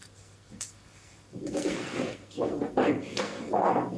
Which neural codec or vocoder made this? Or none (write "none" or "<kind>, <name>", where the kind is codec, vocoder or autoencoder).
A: codec, SNAC